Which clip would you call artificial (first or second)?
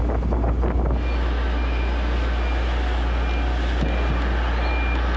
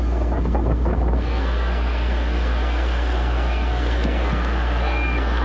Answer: second